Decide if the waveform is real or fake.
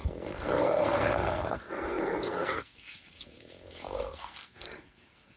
fake